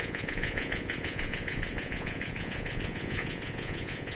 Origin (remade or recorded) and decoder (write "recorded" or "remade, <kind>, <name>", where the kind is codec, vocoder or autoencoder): remade, vocoder, Vocos